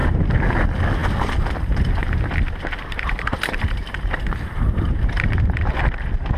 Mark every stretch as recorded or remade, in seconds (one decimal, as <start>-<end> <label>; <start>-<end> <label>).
0.0-0.5 remade; 0.5-2.0 recorded; 2.0-5.8 remade; 5.8-6.4 recorded